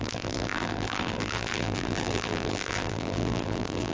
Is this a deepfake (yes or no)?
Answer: yes